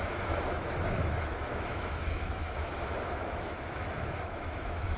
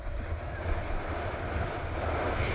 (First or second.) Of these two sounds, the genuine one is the second